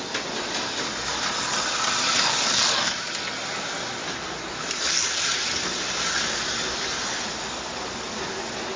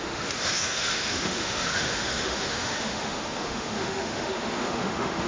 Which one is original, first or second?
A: first